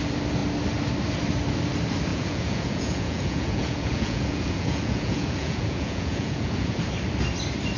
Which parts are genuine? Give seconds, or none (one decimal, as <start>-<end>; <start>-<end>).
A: 0.0-2.1; 6.8-7.8